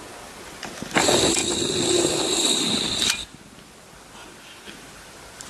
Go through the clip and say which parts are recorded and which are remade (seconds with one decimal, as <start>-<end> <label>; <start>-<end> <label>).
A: 0.0-5.5 recorded